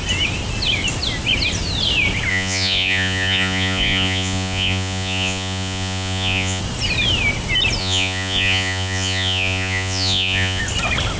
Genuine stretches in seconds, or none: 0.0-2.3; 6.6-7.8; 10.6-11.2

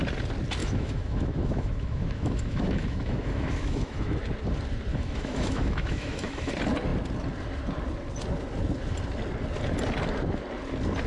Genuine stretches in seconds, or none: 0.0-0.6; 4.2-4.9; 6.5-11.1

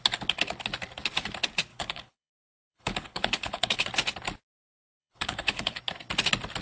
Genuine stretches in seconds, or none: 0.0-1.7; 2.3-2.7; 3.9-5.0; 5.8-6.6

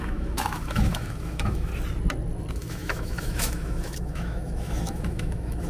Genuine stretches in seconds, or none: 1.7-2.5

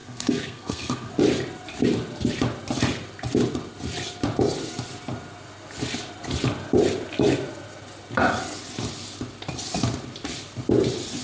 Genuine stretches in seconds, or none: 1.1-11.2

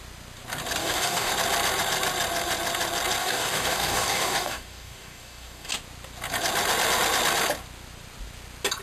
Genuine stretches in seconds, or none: 0.0-0.8; 1.3-3.2; 5.7-8.8